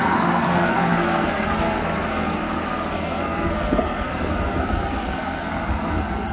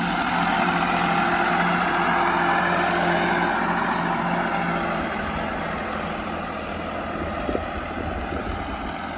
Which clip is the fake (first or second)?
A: first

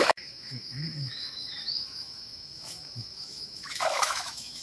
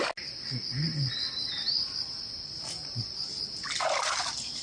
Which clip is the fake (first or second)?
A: first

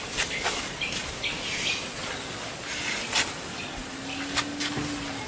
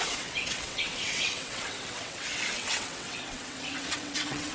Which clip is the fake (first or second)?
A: second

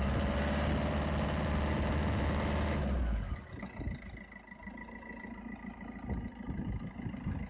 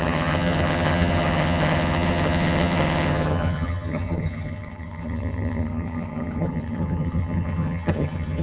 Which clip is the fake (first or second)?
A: second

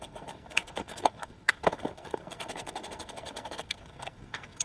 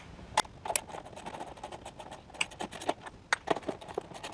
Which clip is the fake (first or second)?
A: first